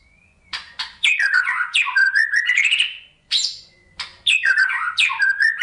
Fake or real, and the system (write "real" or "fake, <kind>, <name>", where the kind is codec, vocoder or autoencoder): fake, vocoder, Vocos